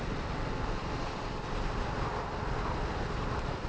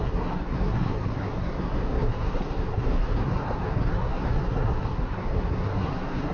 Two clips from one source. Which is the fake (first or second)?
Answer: second